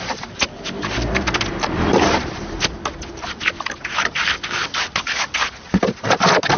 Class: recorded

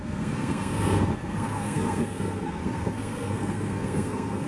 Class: remade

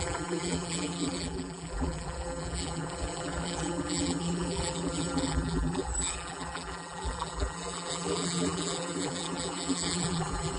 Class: remade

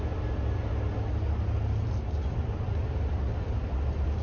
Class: recorded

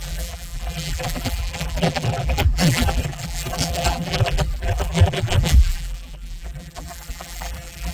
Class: remade